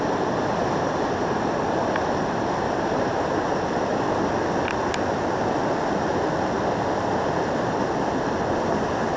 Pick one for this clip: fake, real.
real